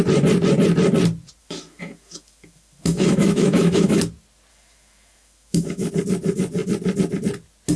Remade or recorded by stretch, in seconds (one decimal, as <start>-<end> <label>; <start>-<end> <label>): 0.0-1.4 recorded; 1.4-4.0 remade; 4.0-4.5 recorded; 4.5-5.9 remade; 5.9-7.8 recorded